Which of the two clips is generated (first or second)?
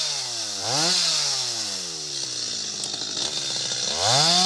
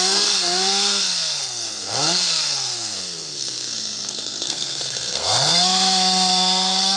second